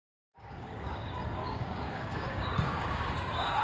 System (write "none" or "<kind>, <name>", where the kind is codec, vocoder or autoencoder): codec, DAC